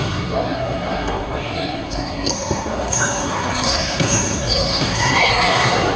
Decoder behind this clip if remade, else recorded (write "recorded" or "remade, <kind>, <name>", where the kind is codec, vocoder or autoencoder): remade, codec, SNAC